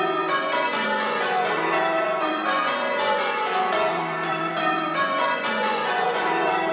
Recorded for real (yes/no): no